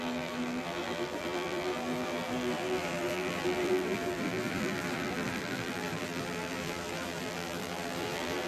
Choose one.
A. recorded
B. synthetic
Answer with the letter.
B